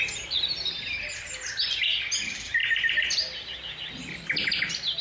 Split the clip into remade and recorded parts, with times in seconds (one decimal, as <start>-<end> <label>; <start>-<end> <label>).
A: 0.0-5.0 recorded